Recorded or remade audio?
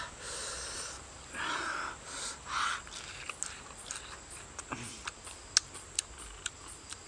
recorded